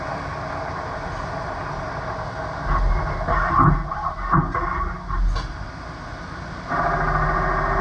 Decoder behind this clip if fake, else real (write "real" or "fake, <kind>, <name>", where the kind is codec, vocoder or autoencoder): real